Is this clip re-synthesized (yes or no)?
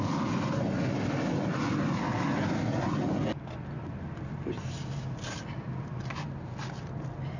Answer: no